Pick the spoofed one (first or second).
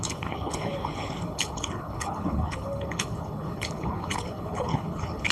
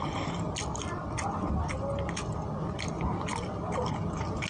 first